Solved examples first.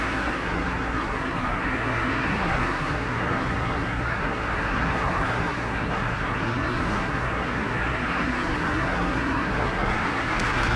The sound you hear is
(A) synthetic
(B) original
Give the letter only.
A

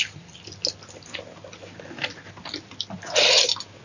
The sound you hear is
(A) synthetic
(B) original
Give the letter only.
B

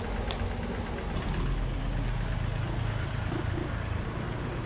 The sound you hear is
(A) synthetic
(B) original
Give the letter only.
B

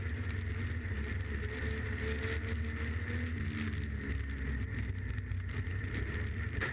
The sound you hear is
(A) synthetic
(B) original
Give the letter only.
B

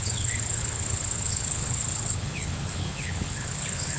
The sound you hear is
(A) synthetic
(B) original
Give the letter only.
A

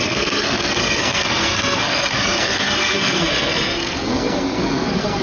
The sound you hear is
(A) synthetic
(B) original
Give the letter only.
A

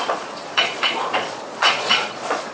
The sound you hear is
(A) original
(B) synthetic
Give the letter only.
B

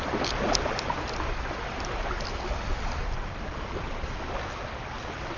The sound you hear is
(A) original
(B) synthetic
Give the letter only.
A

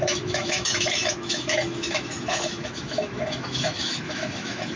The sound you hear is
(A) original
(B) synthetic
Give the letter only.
B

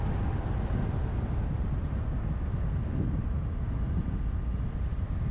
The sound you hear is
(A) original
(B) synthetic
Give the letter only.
A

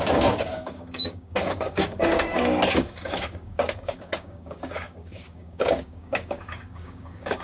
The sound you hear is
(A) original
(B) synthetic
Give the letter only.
B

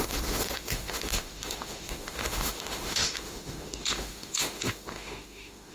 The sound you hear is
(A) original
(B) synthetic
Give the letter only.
B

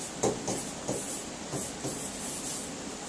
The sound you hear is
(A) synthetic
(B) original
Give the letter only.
B